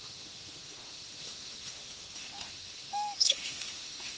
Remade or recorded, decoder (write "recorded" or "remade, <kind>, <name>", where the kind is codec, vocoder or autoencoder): remade, autoencoder, DAC-VAE